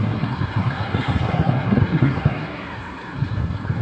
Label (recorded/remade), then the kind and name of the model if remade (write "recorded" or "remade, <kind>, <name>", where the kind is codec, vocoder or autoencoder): remade, codec, SNAC